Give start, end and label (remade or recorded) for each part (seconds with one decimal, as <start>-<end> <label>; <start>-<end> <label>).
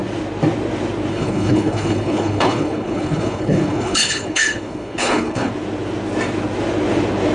0.0-1.1 recorded; 1.1-5.5 remade; 5.5-7.3 recorded